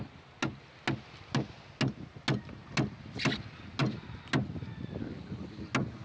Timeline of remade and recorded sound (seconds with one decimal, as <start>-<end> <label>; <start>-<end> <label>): 0.0-6.0 recorded